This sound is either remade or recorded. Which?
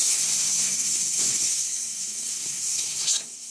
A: remade